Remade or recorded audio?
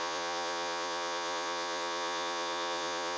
remade